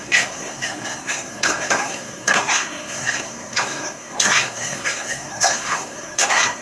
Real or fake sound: fake